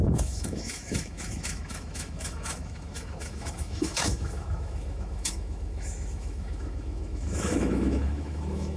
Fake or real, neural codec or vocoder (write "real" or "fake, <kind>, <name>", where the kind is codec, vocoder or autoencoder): fake, autoencoder, DAC-VAE